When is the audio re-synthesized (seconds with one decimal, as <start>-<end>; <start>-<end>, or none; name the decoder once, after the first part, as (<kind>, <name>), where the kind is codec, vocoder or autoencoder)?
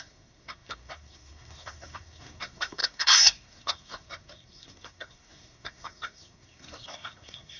0.0-7.6 (codec, SNAC)